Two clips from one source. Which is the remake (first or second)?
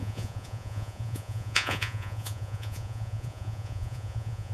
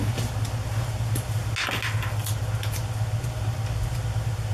first